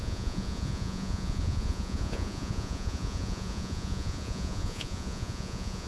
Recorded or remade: remade